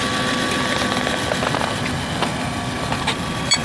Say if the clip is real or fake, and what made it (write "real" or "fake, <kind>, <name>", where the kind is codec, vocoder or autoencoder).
fake, vocoder, BigVGAN v2